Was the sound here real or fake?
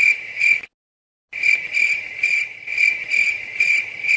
real